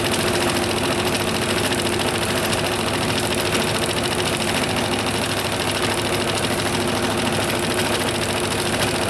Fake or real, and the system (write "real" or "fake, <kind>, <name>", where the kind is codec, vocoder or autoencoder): real